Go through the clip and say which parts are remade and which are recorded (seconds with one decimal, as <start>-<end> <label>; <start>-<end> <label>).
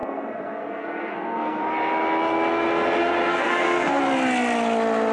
0.0-1.6 remade; 1.6-3.3 recorded; 3.3-4.0 remade; 4.0-5.1 recorded